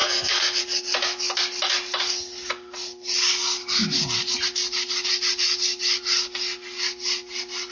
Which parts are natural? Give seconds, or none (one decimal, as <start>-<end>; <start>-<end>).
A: 0.6-7.7